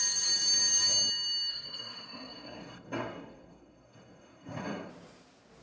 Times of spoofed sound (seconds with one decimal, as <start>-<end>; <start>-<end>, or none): 1.5-4.9